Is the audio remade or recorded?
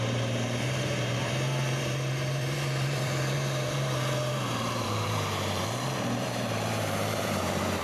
remade